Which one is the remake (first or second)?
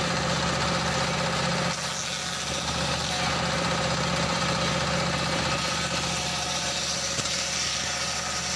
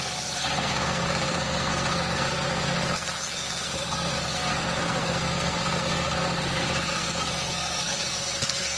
second